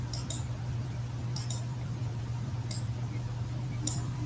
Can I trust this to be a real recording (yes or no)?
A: no